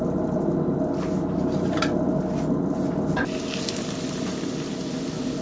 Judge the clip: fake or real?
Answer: real